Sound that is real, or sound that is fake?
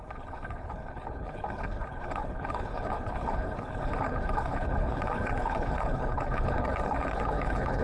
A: fake